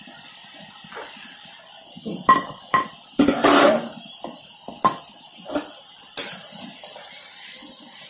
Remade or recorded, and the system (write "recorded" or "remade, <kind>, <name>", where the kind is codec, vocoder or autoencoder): recorded